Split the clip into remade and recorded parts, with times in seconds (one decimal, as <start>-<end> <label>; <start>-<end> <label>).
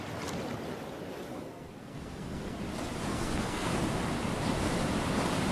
0.0-1.3 recorded; 1.3-2.6 remade; 2.6-3.1 recorded; 3.1-3.7 remade; 3.7-5.5 recorded